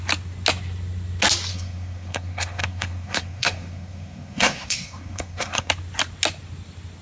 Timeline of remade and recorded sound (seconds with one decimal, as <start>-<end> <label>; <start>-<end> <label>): 0.0-1.5 recorded; 1.5-5.7 remade; 5.7-7.0 recorded